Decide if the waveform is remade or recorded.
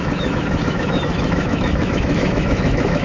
remade